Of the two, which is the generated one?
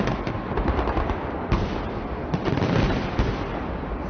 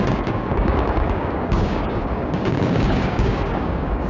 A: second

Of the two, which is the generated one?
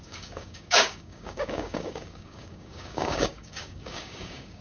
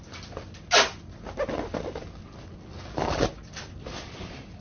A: first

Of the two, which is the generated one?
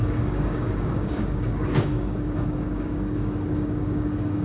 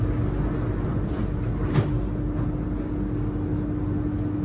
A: first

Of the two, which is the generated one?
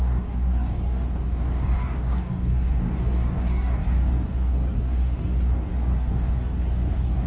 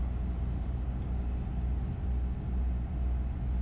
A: first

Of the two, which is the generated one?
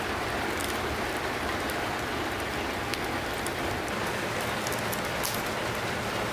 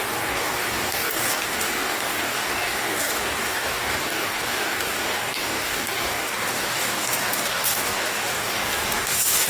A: second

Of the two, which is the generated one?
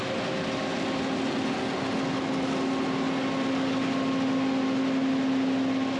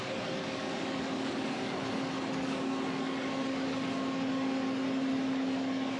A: second